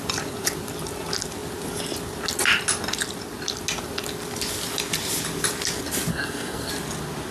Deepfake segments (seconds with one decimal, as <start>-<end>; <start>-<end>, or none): 6.1-6.7